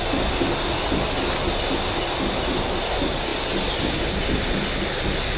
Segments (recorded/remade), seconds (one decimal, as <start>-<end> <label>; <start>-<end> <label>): 0.0-5.4 recorded